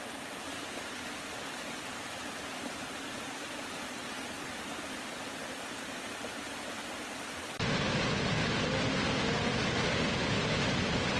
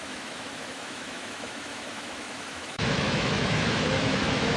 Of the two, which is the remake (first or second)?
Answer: second